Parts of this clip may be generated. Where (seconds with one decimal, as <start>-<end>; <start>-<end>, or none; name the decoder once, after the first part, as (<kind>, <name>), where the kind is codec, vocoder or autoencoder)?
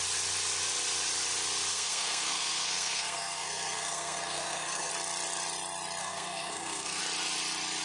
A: 1.7-4.9 (codec, SNAC); 6.0-7.0